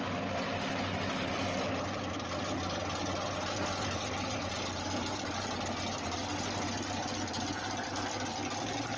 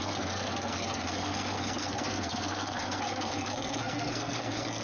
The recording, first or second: first